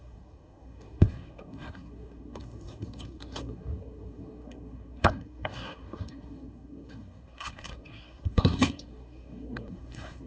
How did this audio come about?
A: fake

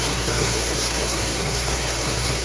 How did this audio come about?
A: fake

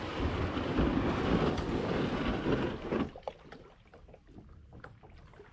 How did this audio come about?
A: real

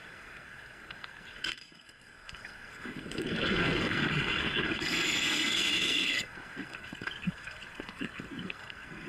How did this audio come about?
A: fake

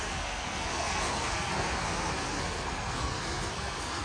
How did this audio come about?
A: fake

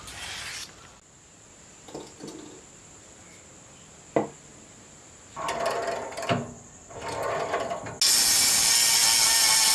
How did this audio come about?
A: real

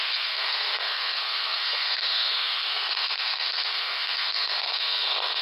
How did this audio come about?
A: fake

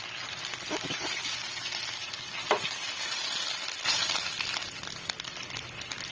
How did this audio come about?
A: real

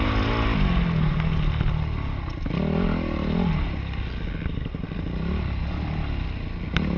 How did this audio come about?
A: real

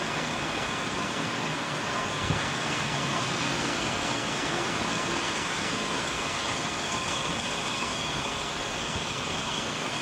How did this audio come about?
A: fake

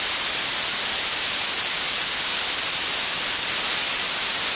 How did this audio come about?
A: real